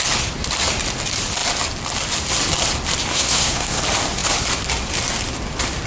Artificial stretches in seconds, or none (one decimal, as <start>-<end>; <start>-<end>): 3.1-3.8